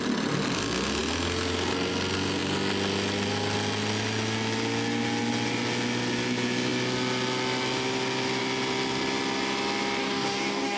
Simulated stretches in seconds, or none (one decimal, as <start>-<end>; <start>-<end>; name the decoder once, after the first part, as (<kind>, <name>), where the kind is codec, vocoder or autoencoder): 10.0-10.8 (codec, DAC)